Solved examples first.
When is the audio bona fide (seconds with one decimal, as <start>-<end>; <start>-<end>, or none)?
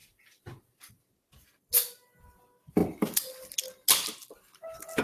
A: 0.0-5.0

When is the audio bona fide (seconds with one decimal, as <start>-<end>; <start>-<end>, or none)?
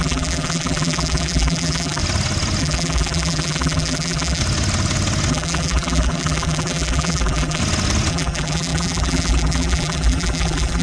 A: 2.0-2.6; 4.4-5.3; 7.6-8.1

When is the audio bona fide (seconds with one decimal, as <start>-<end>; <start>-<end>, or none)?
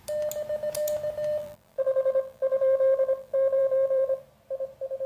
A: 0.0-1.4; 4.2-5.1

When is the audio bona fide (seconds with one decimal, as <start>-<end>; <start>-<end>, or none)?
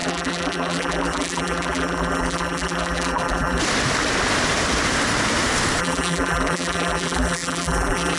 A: 3.6-5.8